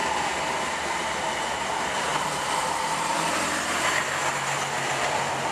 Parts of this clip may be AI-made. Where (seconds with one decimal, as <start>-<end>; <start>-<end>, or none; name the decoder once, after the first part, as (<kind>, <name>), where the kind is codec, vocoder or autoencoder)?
2.1-3.9 (vocoder, BigVGAN v2)